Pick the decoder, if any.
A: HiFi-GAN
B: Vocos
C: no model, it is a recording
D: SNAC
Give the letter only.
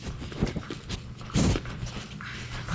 C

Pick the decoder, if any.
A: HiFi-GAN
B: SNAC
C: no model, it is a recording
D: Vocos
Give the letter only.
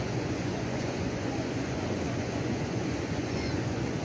D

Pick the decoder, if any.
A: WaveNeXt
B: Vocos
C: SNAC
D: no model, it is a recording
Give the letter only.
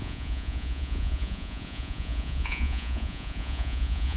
B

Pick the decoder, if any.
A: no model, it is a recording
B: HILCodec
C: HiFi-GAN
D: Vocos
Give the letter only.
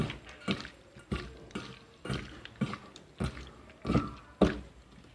A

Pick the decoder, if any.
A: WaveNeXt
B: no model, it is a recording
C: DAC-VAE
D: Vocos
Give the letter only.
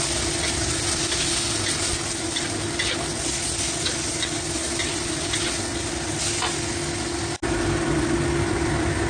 B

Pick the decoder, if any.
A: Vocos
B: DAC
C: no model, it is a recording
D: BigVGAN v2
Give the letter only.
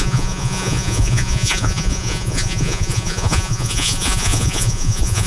A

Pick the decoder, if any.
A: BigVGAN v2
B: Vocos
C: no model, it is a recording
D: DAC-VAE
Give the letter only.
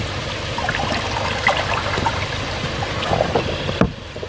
C